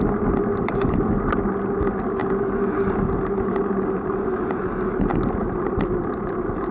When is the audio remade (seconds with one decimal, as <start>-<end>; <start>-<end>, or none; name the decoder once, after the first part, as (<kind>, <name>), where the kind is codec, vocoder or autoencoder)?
none